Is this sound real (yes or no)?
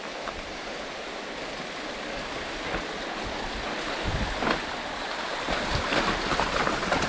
yes